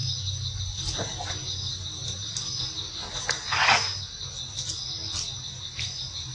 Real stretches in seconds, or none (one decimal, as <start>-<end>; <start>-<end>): 0.0-6.3